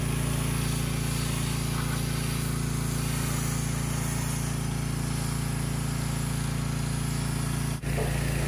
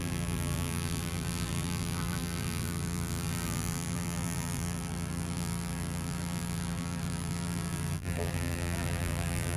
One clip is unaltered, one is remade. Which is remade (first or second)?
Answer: second